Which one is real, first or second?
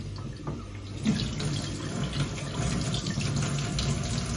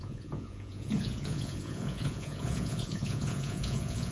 first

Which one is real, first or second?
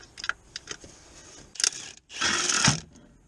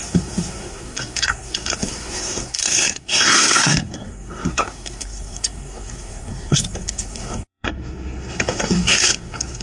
first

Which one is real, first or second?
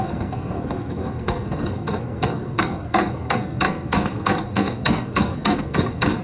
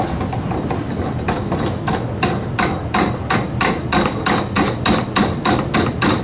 second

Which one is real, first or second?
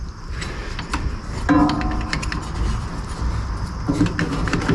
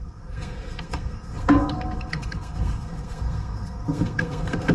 first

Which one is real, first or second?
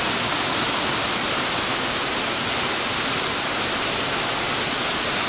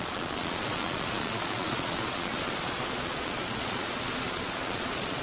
first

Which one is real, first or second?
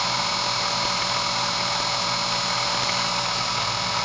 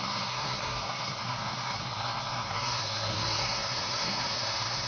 first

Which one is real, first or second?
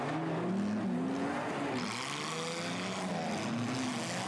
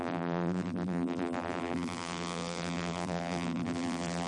first